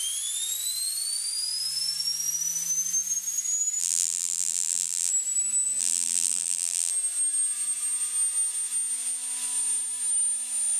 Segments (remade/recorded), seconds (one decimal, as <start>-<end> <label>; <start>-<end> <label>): 0.0-3.8 recorded; 3.8-5.1 remade; 5.1-5.8 recorded; 5.8-6.9 remade; 6.9-10.8 recorded